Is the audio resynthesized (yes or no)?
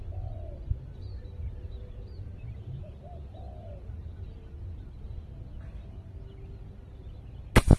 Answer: no